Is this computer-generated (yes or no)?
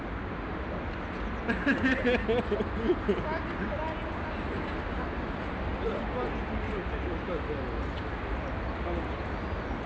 no